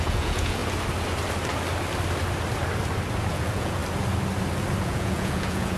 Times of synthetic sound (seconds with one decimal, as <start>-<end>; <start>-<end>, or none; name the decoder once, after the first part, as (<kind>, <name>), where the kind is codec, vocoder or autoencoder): 0.0-0.6 (vocoder, Vocos); 3.3-3.8; 4.8-5.8